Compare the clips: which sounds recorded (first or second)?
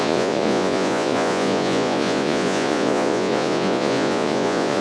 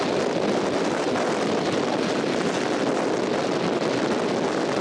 second